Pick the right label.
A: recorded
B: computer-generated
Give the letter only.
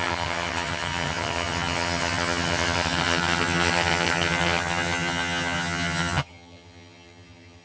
B